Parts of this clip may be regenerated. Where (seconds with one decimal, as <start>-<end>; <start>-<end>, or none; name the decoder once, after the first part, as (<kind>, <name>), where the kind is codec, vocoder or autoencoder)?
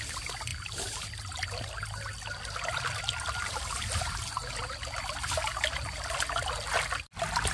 none